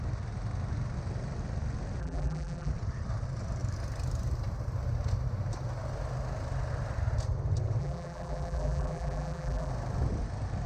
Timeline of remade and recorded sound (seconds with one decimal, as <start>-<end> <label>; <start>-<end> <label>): 0.0-2.0 recorded; 2.0-2.7 remade; 2.7-7.8 recorded; 7.8-9.7 remade; 9.7-10.7 recorded